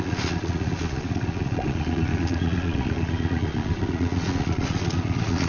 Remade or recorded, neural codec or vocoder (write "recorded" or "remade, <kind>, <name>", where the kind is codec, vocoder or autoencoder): remade, vocoder, Vocos